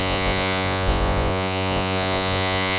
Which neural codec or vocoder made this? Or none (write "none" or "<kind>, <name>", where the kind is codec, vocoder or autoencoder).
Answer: vocoder, Vocos